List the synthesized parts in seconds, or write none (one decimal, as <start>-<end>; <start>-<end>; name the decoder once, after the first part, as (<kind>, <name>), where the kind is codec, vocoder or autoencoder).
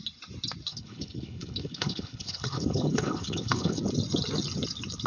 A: 0.7-3.8 (codec, HILCodec)